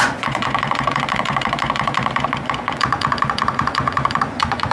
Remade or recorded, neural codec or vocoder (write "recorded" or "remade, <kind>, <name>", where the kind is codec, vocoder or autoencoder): remade, vocoder, Vocos